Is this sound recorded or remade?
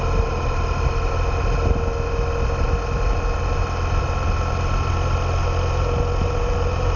recorded